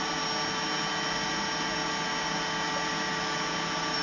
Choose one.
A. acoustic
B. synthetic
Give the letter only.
A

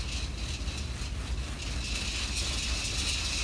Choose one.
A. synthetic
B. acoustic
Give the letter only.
B